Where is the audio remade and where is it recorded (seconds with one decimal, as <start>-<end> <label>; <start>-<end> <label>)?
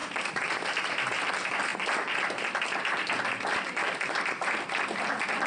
0.0-5.5 recorded